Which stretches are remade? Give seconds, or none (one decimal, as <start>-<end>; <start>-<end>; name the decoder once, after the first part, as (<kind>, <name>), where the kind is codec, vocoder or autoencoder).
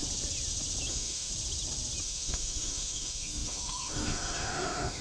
0.9-1.3 (autoencoder, DAC-VAE); 2.0-5.0